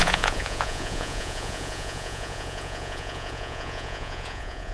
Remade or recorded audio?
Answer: remade